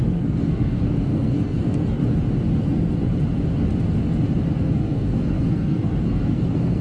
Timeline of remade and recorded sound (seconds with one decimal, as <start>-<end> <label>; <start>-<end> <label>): 0.0-2.0 remade; 2.0-2.6 recorded; 2.6-3.0 remade; 3.0-4.7 recorded; 4.7-6.8 remade